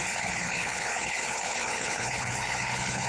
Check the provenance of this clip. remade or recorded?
remade